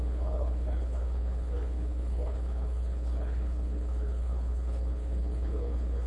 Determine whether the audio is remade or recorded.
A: remade